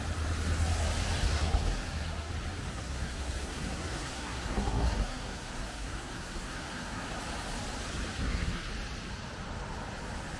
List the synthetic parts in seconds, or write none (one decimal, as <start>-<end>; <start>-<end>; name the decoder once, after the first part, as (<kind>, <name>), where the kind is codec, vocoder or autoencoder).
1.2-2.3 (codec, SNAC); 2.7-7.1; 8.1-8.7